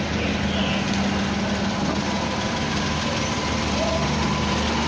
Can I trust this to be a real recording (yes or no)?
yes